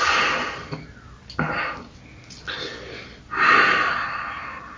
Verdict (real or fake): real